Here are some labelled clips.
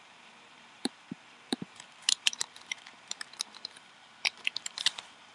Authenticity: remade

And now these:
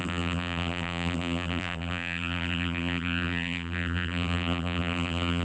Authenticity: remade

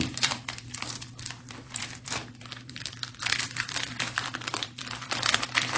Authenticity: remade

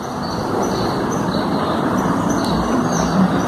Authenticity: recorded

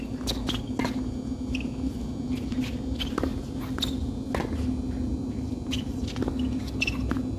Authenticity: recorded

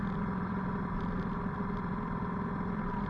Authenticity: remade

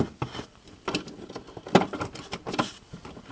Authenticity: recorded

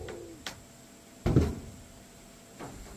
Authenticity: recorded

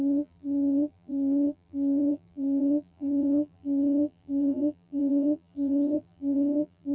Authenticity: remade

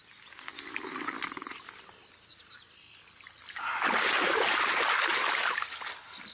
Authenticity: recorded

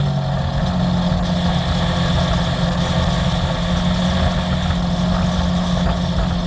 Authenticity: recorded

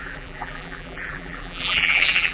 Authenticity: remade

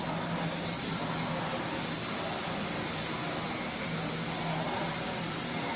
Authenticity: recorded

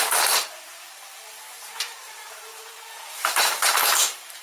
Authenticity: remade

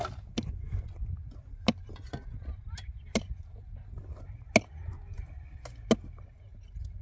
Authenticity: recorded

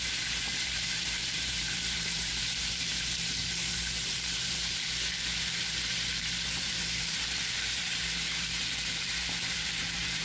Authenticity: remade